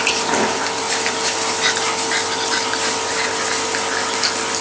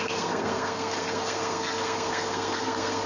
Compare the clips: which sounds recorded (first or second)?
first